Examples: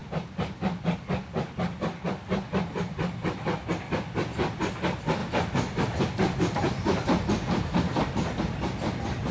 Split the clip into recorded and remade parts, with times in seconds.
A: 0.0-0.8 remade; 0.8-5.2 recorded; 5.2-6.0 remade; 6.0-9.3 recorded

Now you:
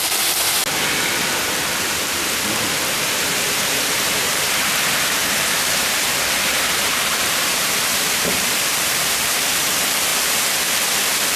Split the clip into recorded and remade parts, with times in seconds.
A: 0.0-3.3 recorded; 3.3-4.7 remade; 4.7-5.2 recorded; 5.2-9.7 remade; 9.7-11.4 recorded

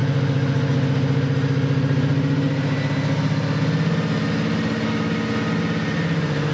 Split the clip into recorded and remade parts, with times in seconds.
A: 0.0-6.5 recorded

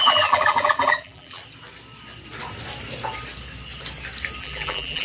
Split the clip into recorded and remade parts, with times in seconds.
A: 0.0-1.4 remade; 1.4-4.4 recorded; 4.4-5.0 remade